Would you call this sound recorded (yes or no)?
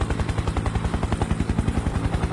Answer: yes